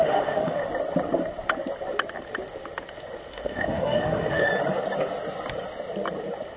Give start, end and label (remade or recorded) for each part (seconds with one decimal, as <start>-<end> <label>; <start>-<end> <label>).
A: 0.0-0.6 remade; 0.6-3.3 recorded; 3.3-4.5 remade; 4.5-6.6 recorded